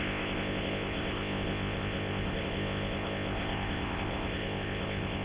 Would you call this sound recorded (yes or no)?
no